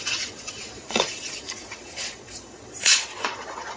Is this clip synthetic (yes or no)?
yes